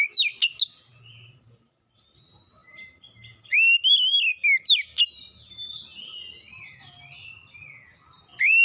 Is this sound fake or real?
real